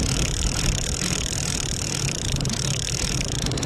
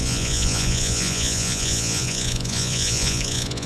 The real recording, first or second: first